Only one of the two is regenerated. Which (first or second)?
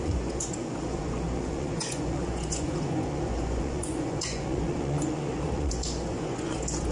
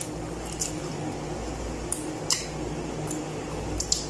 first